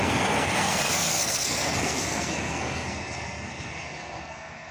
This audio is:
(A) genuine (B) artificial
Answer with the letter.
B